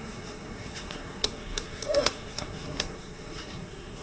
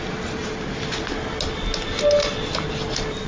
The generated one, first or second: first